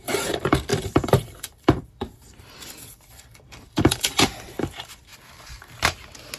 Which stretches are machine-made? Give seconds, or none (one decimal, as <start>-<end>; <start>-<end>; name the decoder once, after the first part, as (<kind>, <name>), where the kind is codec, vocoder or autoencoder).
0.0-5.1 (vocoder, BigVGAN v2)